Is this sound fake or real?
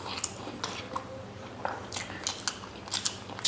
real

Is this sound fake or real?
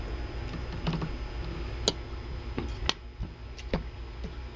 real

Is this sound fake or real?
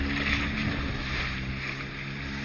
real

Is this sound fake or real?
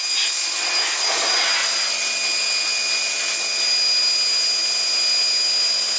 real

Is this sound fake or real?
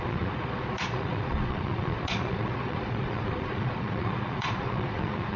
fake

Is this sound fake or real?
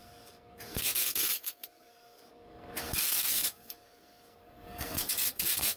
fake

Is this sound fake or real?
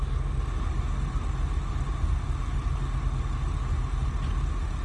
real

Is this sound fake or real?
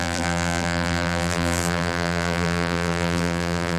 fake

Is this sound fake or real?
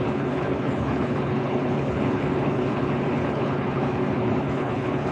fake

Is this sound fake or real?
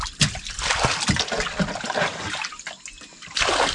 real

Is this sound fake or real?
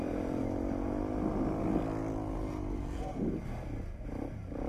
real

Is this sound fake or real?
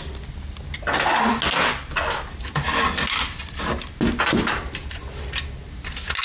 real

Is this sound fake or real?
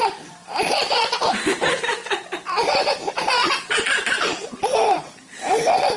fake